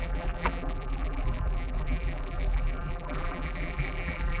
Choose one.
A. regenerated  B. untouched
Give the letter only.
A